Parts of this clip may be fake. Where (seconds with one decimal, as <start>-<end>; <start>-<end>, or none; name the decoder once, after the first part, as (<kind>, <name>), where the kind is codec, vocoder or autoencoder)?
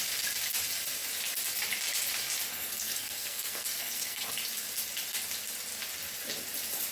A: 2.5-4.3 (codec, SNAC)